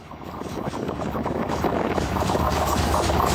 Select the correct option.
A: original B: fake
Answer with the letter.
B